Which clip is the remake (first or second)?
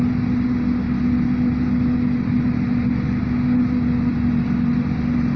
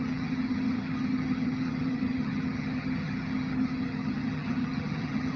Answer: second